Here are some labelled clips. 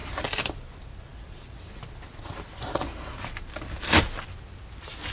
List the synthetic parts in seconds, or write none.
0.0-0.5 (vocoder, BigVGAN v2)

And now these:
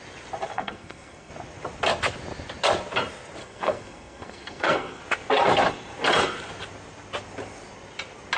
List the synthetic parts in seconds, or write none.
0.5-1.3 (codec, SNAC); 3.4-5.0

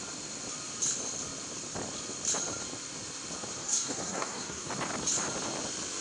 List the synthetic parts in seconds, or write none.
3.6-4.7 (codec, SNAC)

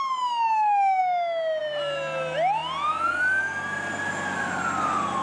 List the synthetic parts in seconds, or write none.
none

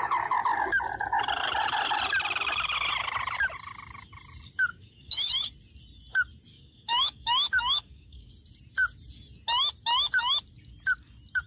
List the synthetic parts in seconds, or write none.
4.7-5.3 (codec, DAC); 6.5-8.3

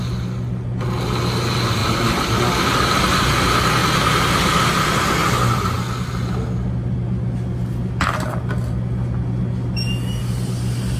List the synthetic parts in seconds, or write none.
none

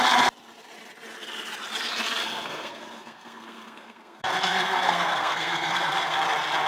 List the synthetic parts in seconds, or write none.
2.2-6.2 (codec, SNAC)